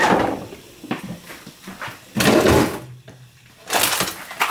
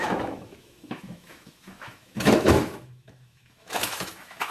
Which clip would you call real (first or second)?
first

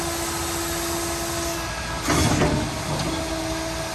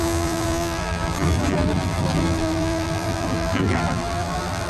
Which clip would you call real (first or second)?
first